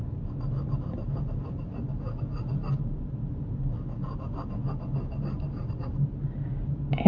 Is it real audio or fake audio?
real